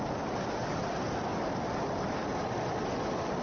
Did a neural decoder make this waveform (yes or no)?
no